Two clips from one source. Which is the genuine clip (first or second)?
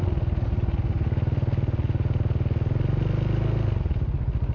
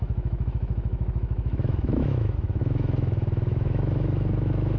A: first